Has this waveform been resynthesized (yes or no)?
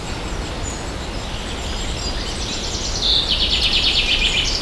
no